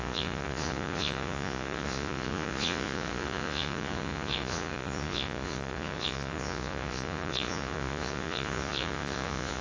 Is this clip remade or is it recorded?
remade